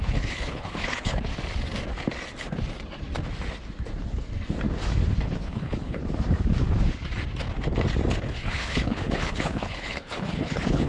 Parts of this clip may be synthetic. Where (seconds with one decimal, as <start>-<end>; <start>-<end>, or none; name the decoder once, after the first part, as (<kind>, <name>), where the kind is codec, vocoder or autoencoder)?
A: 0.0-1.3 (codec, HILCodec); 5.2-6.0; 8.2-10.9